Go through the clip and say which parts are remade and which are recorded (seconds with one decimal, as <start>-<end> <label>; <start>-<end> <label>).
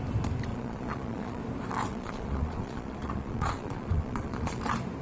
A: 0.0-0.5 recorded; 0.5-1.4 remade; 1.4-1.9 recorded; 1.9-4.6 remade; 4.6-5.0 recorded